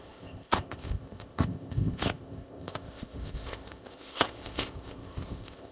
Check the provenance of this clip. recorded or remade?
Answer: remade